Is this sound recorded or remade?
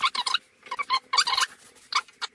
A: recorded